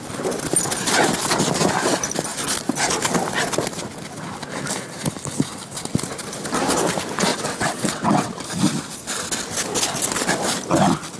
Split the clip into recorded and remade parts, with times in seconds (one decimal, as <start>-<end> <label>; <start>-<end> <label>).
0.0-7.3 recorded; 7.3-8.3 remade; 8.3-11.2 recorded